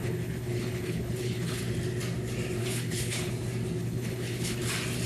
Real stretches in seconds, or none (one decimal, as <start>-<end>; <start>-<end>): 1.6-2.6; 3.3-3.8; 4.6-5.1